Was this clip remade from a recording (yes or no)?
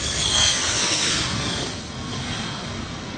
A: yes